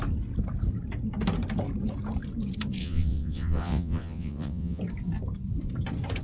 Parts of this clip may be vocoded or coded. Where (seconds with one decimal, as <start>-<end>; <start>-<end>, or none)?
2.8-4.8